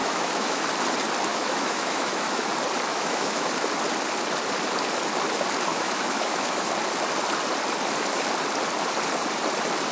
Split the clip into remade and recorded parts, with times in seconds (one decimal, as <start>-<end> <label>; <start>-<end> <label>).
0.0-0.6 remade; 0.6-1.3 recorded; 1.3-2.5 remade; 2.5-2.9 recorded; 2.9-3.5 remade; 3.5-5.7 recorded; 5.7-6.7 remade; 6.7-9.9 recorded